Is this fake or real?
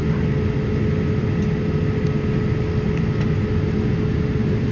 real